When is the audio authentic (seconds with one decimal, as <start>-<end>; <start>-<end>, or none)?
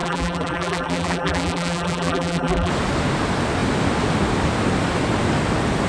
2.7-5.9